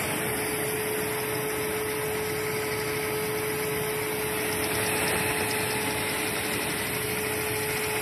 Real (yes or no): yes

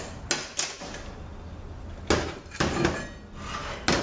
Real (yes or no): yes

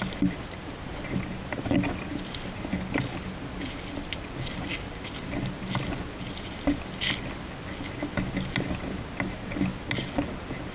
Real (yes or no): yes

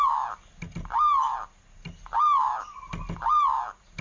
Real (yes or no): yes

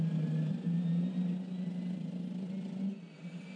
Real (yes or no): yes